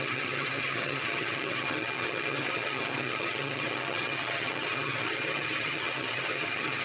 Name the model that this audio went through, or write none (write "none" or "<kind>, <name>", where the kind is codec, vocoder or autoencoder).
vocoder, HiFi-GAN